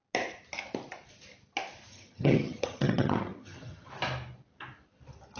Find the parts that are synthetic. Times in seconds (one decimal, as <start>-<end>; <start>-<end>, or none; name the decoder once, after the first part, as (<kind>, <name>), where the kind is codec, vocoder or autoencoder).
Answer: 1.9-3.9 (vocoder, HiFi-GAN)